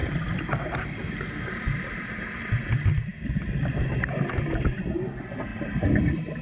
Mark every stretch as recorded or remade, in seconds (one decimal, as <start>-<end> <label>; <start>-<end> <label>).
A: 0.0-2.4 remade; 2.4-5.5 recorded; 5.5-6.4 remade